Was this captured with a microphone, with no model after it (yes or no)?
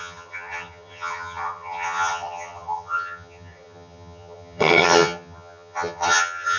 no